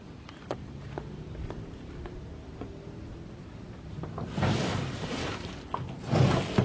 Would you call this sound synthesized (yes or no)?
no